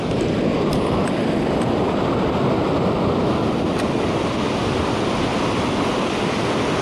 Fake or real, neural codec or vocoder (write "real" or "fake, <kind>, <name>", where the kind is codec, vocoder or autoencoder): real